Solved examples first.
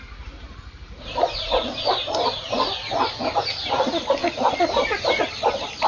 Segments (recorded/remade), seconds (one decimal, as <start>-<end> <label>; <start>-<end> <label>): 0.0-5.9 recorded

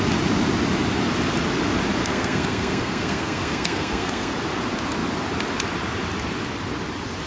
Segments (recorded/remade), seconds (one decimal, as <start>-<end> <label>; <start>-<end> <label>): 0.0-2.0 recorded; 2.0-4.3 remade; 4.3-7.3 recorded

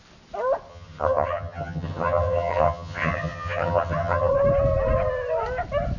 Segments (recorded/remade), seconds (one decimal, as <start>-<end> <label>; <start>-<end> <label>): 0.0-0.7 recorded; 0.7-4.3 remade; 4.3-6.0 recorded

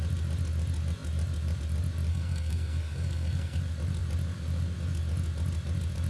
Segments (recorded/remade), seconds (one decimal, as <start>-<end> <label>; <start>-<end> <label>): 0.0-2.1 recorded; 2.1-3.6 remade; 3.6-6.1 recorded